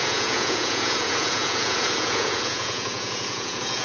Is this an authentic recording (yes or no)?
no